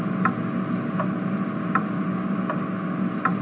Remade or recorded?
recorded